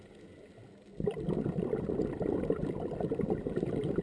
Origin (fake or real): real